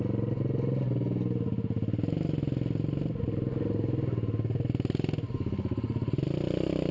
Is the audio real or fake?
real